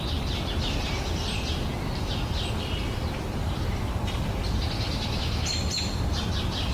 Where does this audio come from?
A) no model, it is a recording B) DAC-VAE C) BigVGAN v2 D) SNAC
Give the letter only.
A